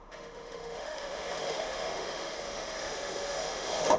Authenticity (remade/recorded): remade